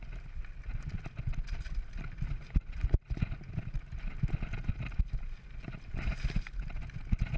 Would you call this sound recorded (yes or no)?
yes